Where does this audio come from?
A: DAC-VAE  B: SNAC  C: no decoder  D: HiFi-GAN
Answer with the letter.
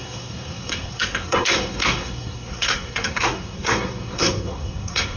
B